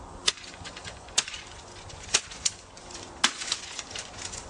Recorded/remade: remade